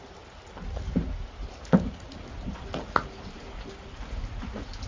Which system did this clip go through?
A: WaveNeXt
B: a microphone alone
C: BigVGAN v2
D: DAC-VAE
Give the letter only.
B